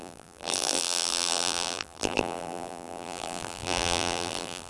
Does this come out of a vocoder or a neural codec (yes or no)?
yes